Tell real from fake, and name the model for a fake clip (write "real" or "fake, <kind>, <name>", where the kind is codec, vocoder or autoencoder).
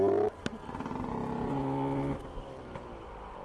real